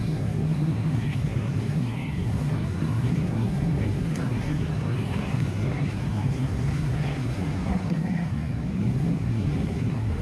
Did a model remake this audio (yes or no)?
yes